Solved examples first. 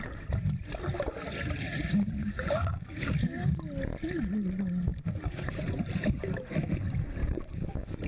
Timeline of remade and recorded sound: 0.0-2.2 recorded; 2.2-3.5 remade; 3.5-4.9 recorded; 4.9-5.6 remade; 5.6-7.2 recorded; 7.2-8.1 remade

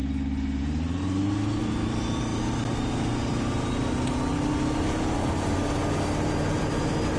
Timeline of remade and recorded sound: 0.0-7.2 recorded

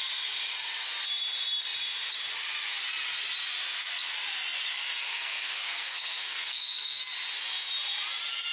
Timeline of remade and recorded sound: 0.0-4.7 recorded; 4.7-7.0 remade; 7.0-8.5 recorded

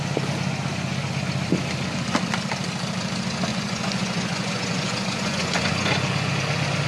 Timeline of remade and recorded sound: 0.0-3.5 recorded; 3.5-6.3 remade; 6.3-6.9 recorded